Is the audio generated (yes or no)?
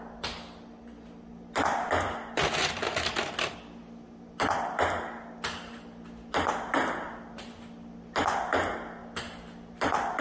no